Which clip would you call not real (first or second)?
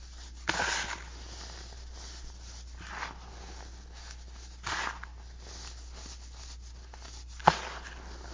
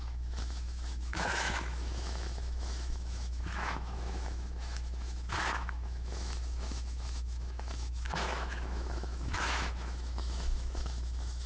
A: second